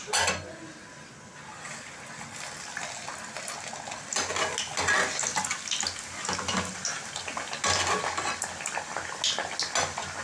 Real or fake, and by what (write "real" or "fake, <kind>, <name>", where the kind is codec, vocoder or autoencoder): real